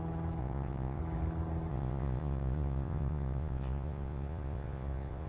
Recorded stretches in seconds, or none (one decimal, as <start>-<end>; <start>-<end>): 0.0-0.4; 1.0-1.7